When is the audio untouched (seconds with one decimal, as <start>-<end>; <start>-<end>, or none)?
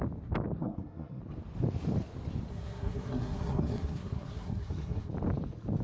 0.0-0.6; 1.2-2.5; 5.1-5.8